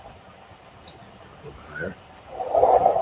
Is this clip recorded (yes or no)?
no